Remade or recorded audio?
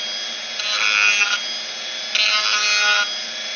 recorded